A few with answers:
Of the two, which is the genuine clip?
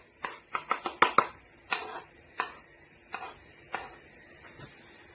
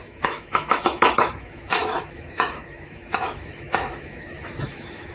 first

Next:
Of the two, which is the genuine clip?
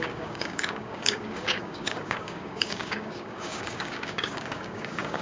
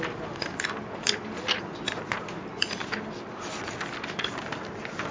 second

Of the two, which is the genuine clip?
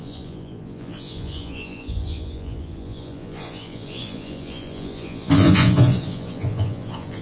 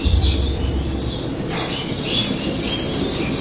second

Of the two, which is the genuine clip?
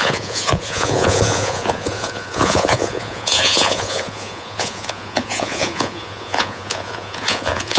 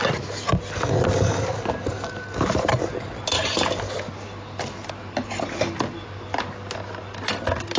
second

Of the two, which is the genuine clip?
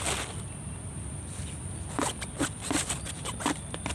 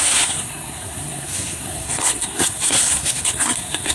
first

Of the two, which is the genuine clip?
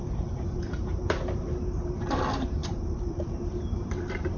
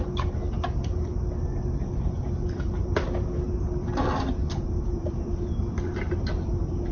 second